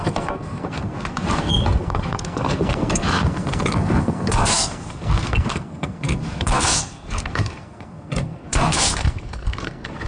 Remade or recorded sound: remade